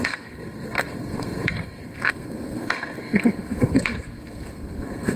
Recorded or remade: remade